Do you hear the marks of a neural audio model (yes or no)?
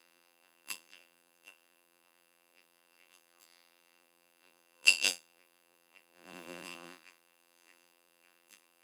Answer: yes